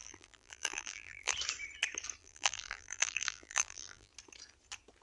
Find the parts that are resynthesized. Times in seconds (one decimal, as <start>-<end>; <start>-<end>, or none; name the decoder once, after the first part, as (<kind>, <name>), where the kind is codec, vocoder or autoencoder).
0.0-1.3 (vocoder, BigVGAN v2); 2.2-4.1